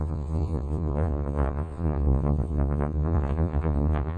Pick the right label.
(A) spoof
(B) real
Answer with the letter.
A